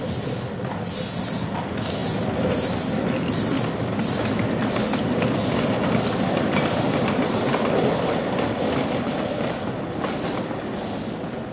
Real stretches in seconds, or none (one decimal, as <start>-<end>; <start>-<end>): 0.0-11.5

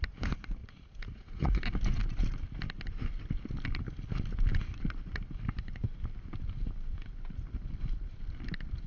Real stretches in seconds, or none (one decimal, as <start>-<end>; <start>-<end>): 0.0-0.6; 1.6-8.9

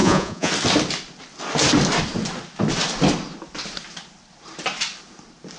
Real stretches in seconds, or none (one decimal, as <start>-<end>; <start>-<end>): 0.5-5.6

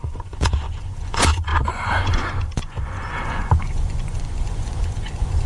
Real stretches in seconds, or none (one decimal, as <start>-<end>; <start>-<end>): none

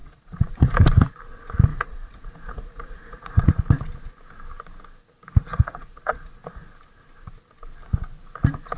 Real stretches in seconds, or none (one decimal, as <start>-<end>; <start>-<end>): 1.1-1.7; 3.5-5.5; 6.3-8.8

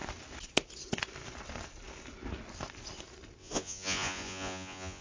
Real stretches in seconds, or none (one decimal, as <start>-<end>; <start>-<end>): 0.0-3.4

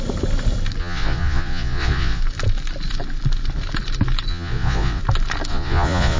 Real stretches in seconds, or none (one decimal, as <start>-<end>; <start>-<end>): 0.0-0.8; 2.2-4.3; 5.0-5.5